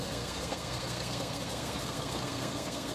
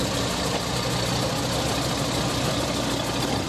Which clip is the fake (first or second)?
first